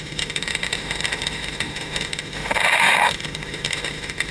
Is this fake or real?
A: fake